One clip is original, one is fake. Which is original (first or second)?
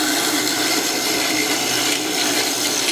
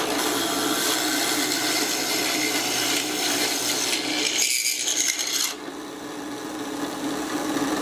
second